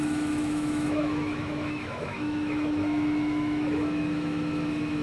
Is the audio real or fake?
fake